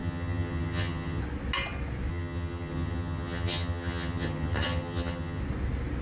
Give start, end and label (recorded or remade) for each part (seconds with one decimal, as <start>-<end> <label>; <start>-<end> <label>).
0.0-1.2 remade; 1.2-2.1 recorded; 2.1-5.4 remade; 5.4-6.0 recorded